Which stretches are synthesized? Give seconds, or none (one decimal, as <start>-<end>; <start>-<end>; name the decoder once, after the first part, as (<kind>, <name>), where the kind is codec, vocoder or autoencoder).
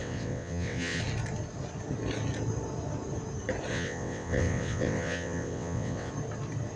0.0-1.0 (vocoder, WaveNeXt); 3.7-6.1